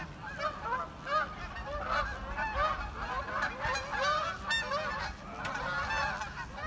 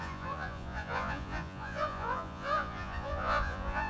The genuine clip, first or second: first